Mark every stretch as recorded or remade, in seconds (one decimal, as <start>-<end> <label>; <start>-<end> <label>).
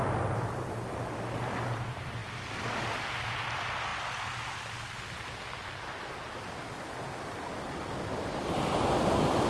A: 0.0-9.5 recorded